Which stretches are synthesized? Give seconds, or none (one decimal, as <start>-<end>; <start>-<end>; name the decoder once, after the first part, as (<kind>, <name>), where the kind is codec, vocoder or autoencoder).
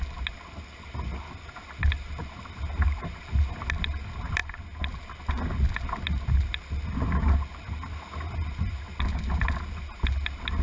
none